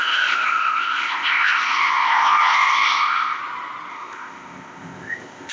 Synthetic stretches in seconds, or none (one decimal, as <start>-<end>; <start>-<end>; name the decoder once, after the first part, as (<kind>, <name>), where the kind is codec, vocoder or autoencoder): 0.0-3.4 (codec, ZipCodec); 3.9-5.5